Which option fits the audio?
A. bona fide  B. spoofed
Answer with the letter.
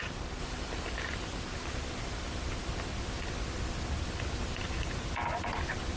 A